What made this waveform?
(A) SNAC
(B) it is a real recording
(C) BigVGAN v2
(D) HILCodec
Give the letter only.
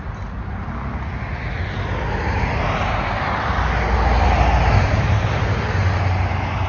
B